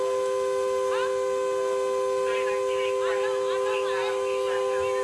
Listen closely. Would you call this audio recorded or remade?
recorded